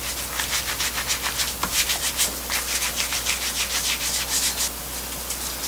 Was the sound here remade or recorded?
recorded